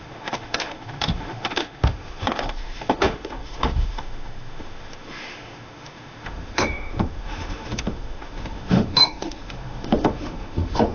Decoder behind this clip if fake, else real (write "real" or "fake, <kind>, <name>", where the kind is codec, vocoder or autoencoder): fake, autoencoder, DAC-VAE